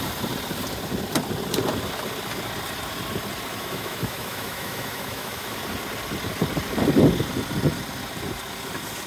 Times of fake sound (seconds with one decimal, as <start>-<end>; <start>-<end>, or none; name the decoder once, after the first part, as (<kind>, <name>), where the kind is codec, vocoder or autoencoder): 3.5-5.6 (autoencoder, DAC-VAE)